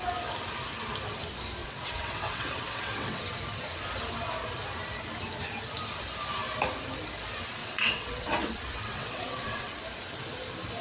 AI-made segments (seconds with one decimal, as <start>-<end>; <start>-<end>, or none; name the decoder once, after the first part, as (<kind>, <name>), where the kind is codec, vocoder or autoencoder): 1.6-3.2 (vocoder, WaveNeXt); 7.6-9.8